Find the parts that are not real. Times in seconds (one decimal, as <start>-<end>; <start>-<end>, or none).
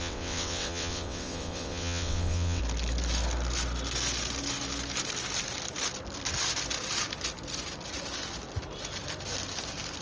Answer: 0.0-2.6